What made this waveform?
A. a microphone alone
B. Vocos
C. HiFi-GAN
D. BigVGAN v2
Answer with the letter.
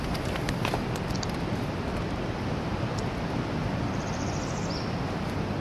A